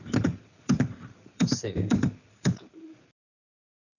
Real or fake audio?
fake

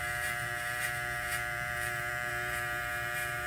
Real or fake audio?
fake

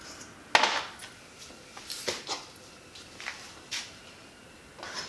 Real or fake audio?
real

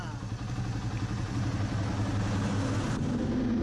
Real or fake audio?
real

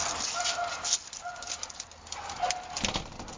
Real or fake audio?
real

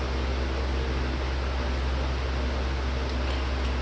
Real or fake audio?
real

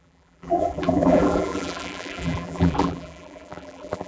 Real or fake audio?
fake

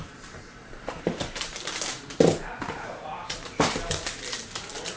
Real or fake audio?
fake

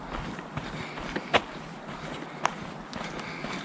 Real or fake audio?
real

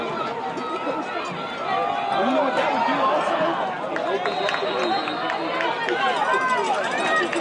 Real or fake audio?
real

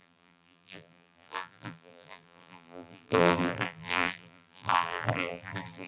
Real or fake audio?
fake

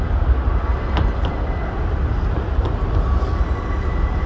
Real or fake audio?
real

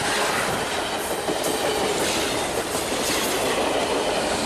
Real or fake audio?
fake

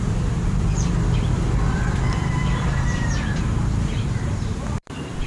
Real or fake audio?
fake